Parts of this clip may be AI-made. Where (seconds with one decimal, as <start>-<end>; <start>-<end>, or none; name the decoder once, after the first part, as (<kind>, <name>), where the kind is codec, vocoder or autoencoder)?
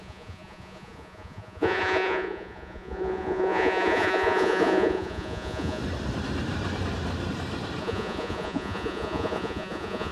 0.0-5.8 (vocoder, Vocos); 7.8-10.1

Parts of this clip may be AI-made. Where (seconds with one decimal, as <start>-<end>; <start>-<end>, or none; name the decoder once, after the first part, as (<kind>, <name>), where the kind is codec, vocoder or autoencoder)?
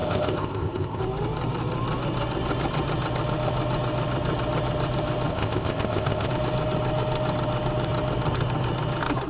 0.0-1.0 (codec, ZipCodec); 5.3-6.3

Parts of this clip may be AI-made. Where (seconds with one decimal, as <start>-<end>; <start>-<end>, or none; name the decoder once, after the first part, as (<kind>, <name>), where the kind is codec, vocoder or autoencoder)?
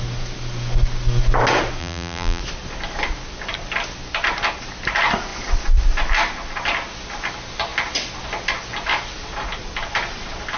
1.8-2.4 (vocoder, BigVGAN v2)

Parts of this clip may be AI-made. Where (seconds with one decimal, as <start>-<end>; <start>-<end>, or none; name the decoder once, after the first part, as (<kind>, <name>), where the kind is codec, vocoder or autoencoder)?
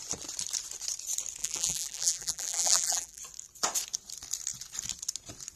1.4-3.2 (vocoder, BigVGAN v2)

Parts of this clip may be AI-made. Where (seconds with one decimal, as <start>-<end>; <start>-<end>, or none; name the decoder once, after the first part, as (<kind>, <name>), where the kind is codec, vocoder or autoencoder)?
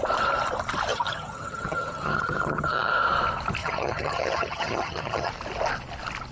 0.9-2.9 (vocoder, HiFi-GAN); 3.6-5.3